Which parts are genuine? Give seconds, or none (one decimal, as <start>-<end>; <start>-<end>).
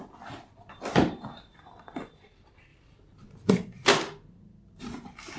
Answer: none